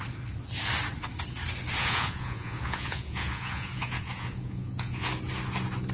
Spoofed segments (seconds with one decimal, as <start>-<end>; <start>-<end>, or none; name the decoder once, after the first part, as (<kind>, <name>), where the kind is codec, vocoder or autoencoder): 1.8-5.1 (vocoder, Vocos)